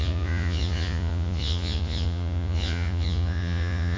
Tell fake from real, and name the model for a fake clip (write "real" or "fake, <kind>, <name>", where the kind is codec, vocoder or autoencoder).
fake, vocoder, Vocos